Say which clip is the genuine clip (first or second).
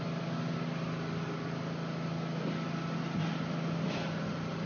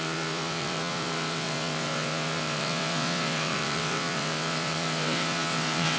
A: first